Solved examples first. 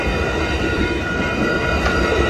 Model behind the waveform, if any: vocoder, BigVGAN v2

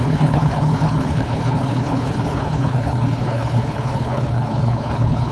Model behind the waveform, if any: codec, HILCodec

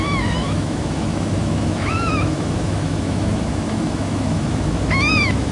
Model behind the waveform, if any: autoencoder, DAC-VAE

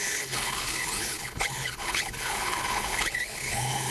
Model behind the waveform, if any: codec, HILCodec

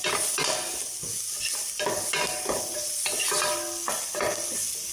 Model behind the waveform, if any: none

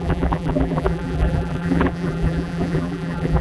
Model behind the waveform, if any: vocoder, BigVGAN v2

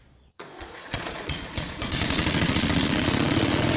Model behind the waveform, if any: vocoder, Vocos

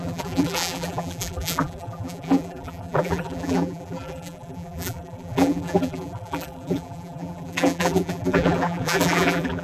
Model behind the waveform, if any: vocoder, BigVGAN v2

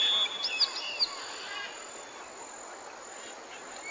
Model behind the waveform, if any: none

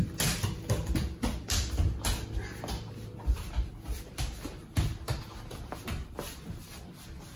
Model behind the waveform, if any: none